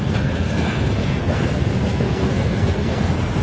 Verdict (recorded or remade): remade